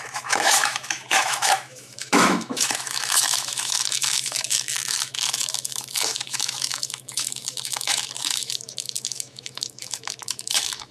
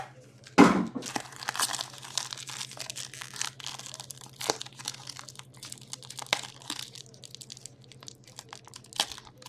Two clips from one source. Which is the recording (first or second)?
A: second